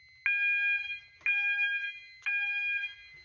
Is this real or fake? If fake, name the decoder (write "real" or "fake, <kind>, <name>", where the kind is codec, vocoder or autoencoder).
real